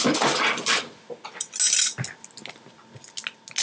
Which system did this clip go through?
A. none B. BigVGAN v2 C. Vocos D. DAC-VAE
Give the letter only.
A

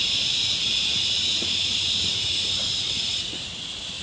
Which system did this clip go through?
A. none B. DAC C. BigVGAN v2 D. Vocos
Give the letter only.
D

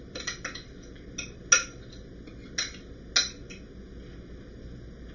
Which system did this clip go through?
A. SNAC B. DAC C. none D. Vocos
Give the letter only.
C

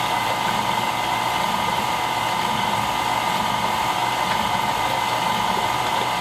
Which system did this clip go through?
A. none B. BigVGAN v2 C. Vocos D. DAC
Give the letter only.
B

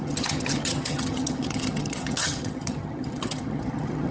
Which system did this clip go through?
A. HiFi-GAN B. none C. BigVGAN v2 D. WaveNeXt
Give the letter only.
A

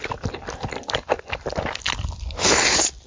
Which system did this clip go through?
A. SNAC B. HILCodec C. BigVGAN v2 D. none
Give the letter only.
D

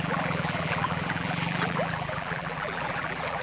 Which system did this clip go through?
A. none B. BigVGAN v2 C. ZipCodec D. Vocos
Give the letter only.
B